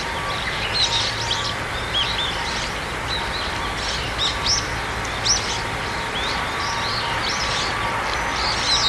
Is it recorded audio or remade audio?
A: recorded